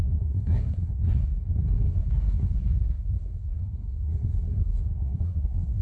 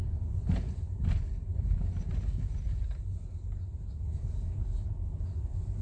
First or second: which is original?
second